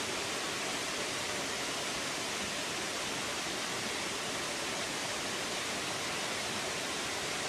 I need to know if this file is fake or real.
fake